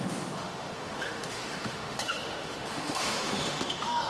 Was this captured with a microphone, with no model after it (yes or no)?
no